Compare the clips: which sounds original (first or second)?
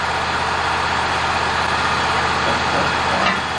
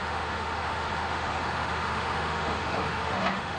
first